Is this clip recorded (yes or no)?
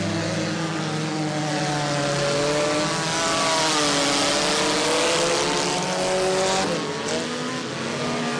yes